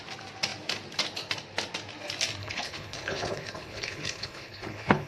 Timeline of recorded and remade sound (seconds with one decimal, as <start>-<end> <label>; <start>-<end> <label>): 0.0-2.4 recorded; 2.4-5.1 remade